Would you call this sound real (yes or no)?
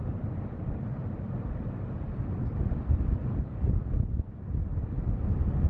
yes